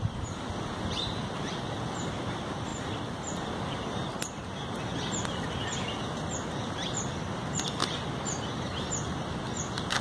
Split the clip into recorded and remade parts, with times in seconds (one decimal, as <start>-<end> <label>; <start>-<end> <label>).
0.0-10.0 recorded